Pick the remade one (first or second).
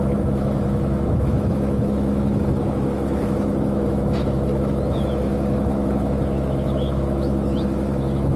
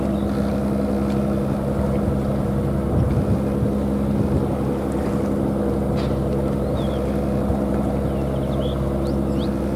first